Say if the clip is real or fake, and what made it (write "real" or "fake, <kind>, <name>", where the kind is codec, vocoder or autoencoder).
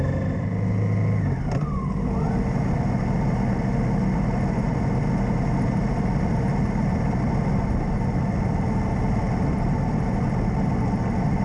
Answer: real